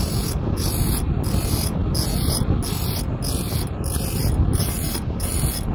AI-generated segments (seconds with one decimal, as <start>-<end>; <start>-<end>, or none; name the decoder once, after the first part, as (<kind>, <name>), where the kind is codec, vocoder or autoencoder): 4.5-5.3 (vocoder, BigVGAN v2)